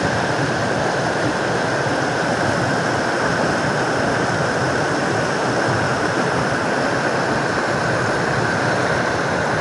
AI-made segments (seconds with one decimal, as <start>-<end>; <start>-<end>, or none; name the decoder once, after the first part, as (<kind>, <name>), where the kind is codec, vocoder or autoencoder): none